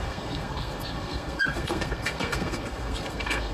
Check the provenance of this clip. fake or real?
fake